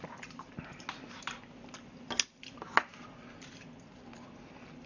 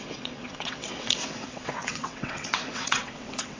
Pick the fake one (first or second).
second